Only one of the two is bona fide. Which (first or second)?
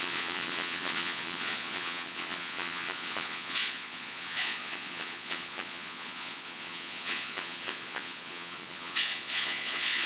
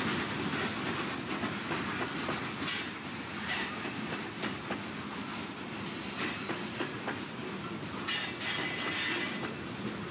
second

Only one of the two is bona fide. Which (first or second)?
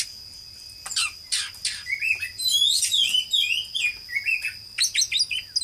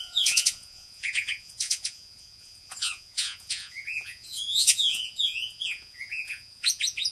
first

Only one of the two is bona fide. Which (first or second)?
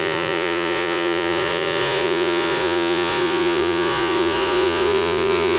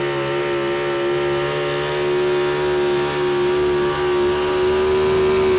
second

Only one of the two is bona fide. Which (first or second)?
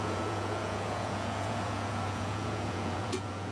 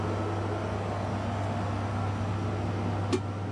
second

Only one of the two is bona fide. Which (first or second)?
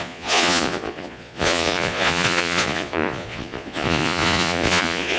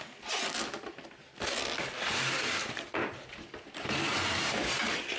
second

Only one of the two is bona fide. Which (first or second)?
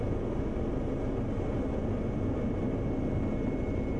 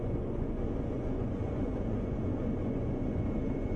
first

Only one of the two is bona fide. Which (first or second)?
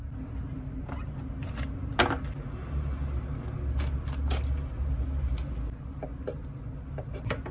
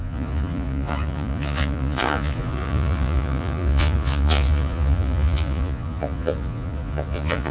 first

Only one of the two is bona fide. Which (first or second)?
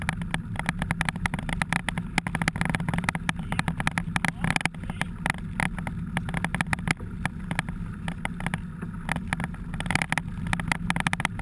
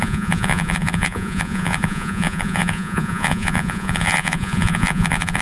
first